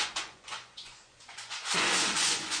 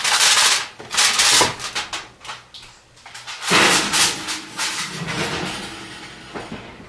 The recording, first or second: second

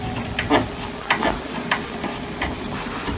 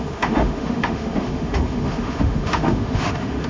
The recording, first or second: first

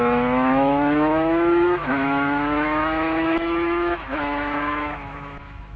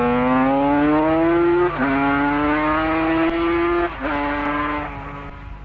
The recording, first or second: second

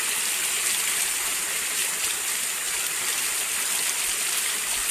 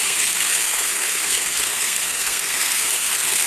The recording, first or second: first